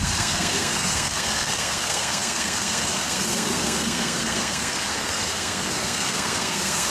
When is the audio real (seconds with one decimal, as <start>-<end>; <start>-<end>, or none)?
none